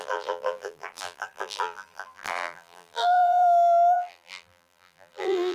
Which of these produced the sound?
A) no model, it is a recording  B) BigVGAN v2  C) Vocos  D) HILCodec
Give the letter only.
B